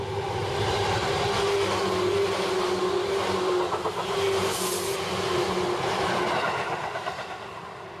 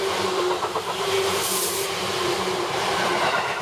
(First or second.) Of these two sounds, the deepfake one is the second